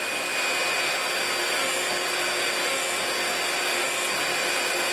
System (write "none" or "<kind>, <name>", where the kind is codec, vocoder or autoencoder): none